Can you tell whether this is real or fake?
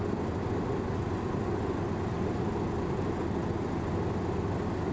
real